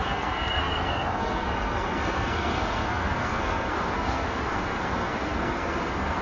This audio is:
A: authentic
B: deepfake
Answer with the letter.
B